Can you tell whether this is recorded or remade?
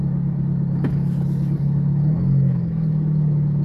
recorded